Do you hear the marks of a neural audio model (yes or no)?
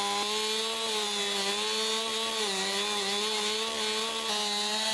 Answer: no